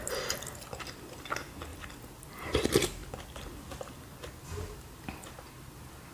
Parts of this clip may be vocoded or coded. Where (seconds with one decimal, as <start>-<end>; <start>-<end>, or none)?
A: none